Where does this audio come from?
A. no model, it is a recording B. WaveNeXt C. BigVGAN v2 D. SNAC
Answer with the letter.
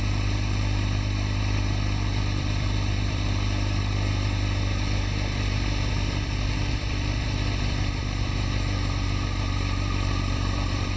C